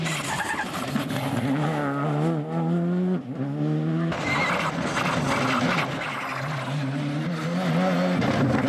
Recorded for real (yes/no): yes